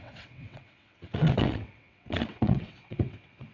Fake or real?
fake